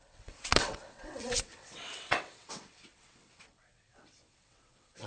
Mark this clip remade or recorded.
remade